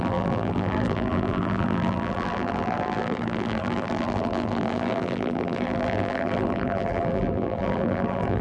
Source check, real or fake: fake